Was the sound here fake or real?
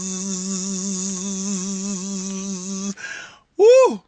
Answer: real